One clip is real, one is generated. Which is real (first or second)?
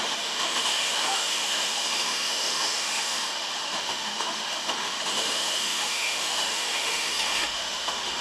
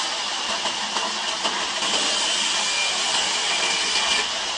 second